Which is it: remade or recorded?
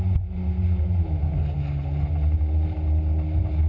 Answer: recorded